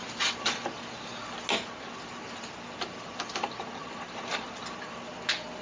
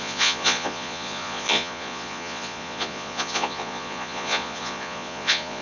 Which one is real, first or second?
first